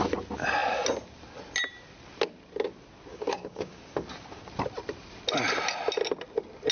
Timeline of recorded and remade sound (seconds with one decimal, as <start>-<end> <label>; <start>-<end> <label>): 0.0-3.1 recorded; 3.1-3.8 remade; 3.8-6.7 recorded